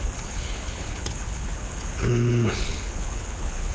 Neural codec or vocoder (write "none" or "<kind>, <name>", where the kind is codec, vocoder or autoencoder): codec, HILCodec